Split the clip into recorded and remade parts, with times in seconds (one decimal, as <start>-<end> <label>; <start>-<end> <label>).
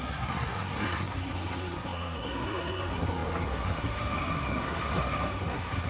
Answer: 0.0-5.9 remade